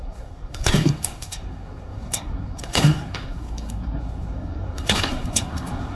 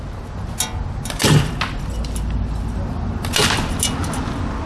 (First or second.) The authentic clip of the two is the second